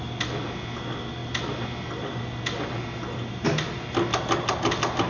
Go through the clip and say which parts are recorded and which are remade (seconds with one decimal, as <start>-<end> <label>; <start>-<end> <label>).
0.0-5.1 recorded